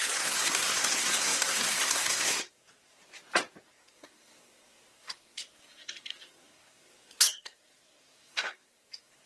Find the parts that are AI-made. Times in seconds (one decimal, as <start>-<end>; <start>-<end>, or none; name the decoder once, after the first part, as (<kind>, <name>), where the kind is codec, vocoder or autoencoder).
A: 0.0-3.0 (codec, SNAC); 3.7-9.3